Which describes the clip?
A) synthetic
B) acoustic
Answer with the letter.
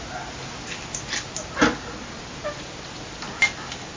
B